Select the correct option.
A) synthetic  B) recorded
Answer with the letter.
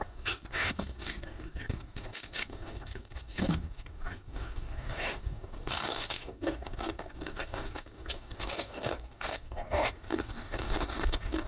A